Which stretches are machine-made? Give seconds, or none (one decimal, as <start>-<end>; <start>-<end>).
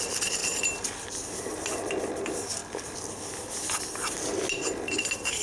none